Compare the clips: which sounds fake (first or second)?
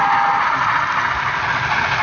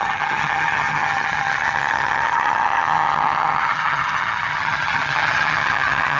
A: second